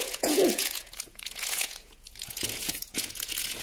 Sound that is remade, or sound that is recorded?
remade